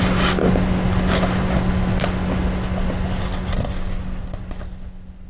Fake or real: real